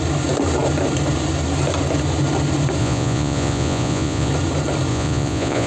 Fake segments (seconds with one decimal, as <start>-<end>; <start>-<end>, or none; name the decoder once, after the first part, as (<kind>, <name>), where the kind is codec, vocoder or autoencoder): 2.8-4.3 (vocoder, Vocos); 4.9-5.7